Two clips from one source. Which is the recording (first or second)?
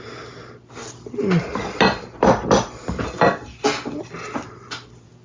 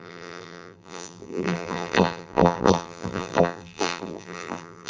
first